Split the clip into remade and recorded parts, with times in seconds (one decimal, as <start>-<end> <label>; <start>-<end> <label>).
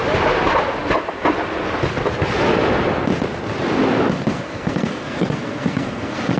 0.0-4.3 recorded; 4.3-6.4 remade